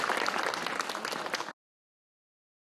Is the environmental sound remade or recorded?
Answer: recorded